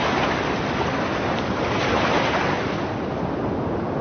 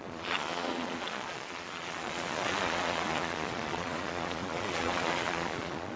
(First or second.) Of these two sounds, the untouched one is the first